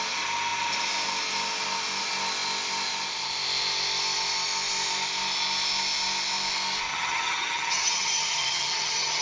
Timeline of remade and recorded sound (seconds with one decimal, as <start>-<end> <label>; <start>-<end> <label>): 0.0-6.9 recorded; 6.9-9.2 remade